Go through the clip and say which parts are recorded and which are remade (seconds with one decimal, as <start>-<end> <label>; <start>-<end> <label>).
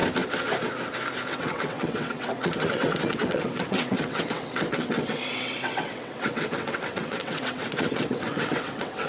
0.0-1.3 recorded; 1.3-9.1 remade